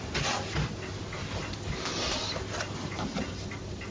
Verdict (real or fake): real